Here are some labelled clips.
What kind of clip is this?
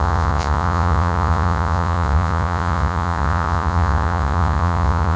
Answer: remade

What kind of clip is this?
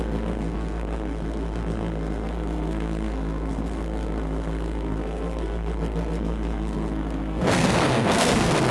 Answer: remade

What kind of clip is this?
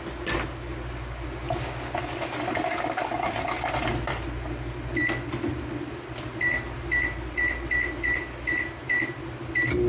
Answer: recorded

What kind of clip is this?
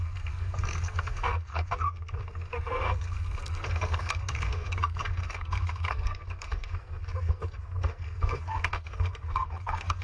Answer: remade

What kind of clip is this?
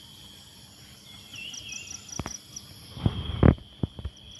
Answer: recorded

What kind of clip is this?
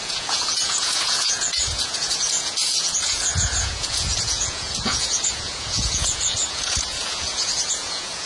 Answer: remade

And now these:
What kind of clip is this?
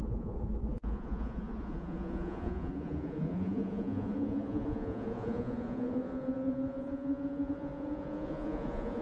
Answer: remade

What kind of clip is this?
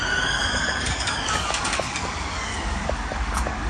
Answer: remade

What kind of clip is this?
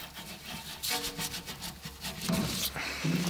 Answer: recorded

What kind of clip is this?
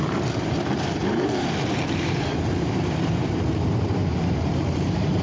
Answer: remade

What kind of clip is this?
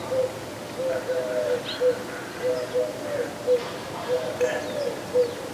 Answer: recorded